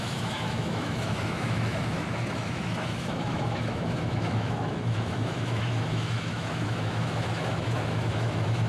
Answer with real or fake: fake